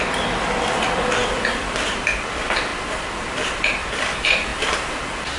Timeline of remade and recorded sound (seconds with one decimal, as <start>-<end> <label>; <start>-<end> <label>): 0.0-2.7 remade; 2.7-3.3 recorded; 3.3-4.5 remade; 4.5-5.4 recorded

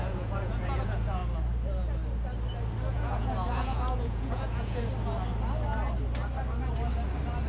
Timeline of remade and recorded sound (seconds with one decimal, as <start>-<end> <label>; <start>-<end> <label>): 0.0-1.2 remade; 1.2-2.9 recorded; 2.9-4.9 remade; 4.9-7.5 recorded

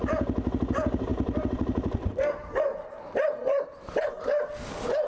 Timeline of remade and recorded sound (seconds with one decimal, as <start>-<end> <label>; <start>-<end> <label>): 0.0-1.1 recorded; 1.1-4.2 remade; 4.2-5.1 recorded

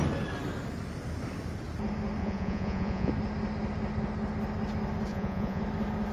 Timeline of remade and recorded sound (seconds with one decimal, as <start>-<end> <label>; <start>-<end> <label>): 0.0-2.2 recorded; 2.2-3.1 remade; 3.1-5.1 recorded; 5.1-5.6 remade; 5.6-6.1 recorded

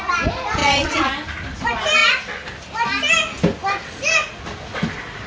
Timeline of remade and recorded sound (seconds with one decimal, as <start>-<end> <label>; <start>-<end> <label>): 0.0-0.6 recorded; 0.6-1.1 remade; 1.1-5.3 recorded

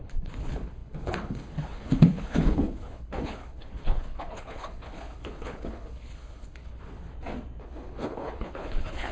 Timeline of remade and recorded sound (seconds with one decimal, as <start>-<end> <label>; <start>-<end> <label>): 0.0-7.0 remade; 7.0-7.6 recorded; 7.6-9.1 remade

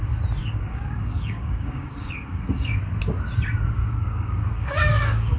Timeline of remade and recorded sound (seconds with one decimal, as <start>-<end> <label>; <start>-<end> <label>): 0.0-0.4 recorded; 0.4-2.8 remade; 2.8-3.8 recorded; 3.8-5.4 remade